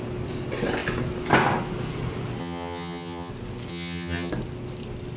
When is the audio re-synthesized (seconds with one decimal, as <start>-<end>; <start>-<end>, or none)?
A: 2.4-3.3; 3.7-4.3